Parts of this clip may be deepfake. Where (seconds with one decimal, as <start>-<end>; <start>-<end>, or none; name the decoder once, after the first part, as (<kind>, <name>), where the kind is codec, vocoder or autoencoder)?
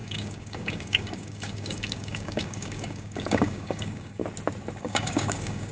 0.0-4.2 (codec, DAC); 4.8-5.7